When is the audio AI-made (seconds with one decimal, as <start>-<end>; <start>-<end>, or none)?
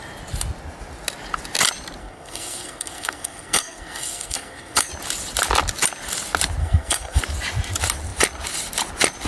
2.0-4.9; 6.6-7.2